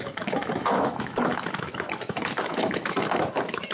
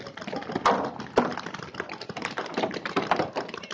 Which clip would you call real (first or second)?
second